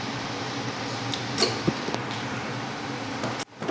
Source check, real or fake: real